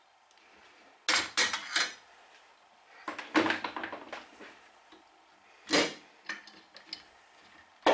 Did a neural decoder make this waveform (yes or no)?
no